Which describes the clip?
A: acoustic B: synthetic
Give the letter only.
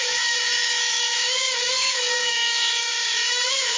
B